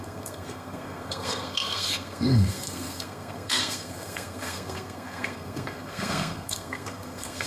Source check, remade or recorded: remade